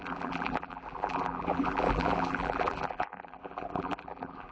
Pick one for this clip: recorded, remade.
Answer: remade